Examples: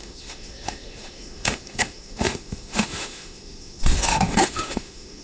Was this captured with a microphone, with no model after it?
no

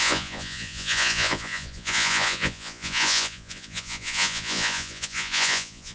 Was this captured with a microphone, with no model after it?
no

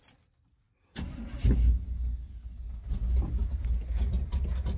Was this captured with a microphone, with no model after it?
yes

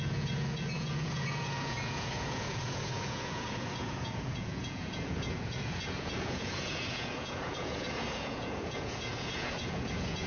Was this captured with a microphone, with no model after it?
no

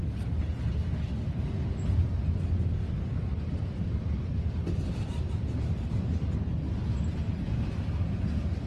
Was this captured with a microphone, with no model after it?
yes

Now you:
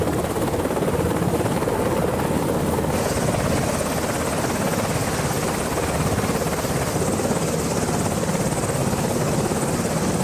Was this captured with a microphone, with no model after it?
yes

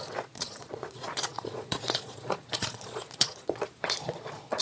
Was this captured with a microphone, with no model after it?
no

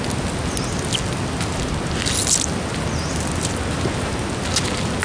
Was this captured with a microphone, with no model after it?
yes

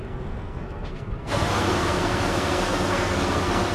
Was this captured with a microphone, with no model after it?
no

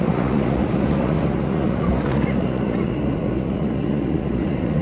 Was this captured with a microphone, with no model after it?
no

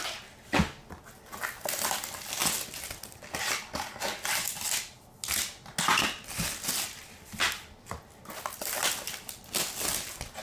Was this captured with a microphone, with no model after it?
yes